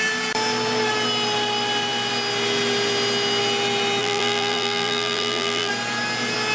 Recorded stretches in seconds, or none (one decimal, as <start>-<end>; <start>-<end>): 0.0-4.0; 5.7-6.5

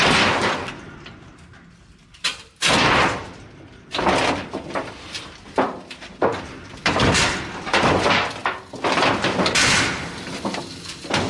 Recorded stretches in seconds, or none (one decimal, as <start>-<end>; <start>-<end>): 0.0-3.2; 7.9-11.3